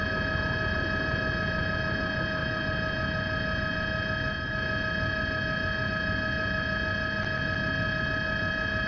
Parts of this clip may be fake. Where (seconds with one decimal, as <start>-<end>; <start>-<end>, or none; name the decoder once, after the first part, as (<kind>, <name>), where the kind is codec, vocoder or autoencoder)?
none